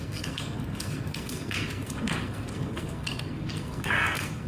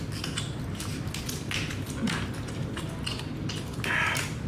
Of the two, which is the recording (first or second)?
second